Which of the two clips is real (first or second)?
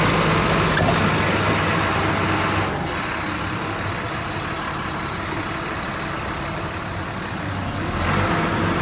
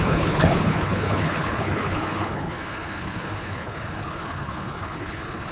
first